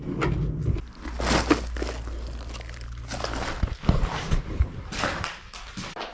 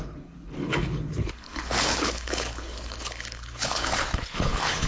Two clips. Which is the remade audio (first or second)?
second